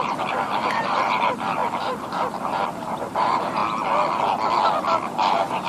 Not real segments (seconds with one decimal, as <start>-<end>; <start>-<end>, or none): 0.0-3.6; 4.8-5.7